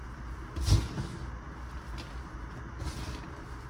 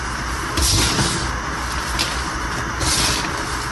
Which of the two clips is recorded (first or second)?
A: first